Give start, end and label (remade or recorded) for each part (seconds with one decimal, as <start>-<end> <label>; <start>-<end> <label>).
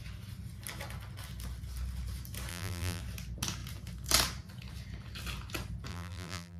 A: 0.0-2.5 recorded; 2.5-3.0 remade; 3.0-5.9 recorded; 5.9-6.6 remade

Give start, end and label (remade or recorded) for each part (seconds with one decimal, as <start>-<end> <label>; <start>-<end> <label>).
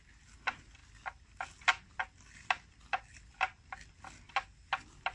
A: 0.0-5.1 recorded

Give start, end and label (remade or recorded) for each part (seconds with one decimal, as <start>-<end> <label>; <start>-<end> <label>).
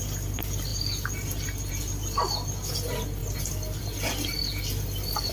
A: 0.0-3.2 recorded; 3.2-5.3 remade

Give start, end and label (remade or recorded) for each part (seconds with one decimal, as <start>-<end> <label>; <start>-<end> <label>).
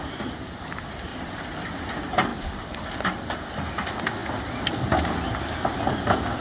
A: 0.0-1.1 recorded; 1.1-1.7 remade; 1.7-2.3 recorded; 2.3-2.9 remade; 2.9-6.4 recorded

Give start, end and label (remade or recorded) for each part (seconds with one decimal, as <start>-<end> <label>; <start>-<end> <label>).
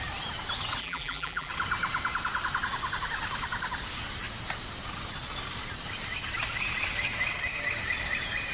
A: 0.0-0.8 recorded; 0.8-1.5 remade; 1.5-8.5 recorded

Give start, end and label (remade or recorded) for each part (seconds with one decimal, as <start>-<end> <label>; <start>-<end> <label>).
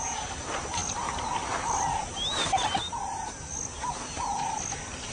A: 0.0-0.8 remade; 0.8-3.9 recorded; 3.9-4.3 remade; 4.3-5.1 recorded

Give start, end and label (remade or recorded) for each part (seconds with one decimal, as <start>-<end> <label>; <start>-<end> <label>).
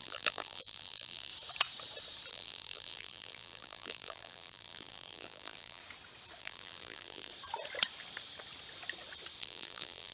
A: 0.0-1.3 remade; 1.3-2.3 recorded; 2.3-5.8 remade; 5.8-6.4 recorded; 6.4-7.3 remade; 7.3-9.4 recorded; 9.4-10.1 remade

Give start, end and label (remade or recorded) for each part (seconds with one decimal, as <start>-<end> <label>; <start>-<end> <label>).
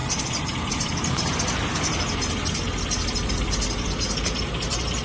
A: 0.0-1.4 remade; 1.4-5.0 recorded